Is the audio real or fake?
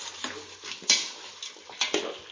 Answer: real